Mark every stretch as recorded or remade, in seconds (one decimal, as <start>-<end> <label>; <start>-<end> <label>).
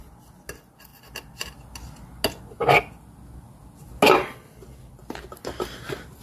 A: 0.0-6.2 recorded